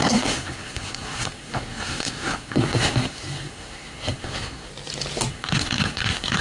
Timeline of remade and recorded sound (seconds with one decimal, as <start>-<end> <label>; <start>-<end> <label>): 0.0-4.7 remade; 4.7-5.3 recorded; 5.3-6.4 remade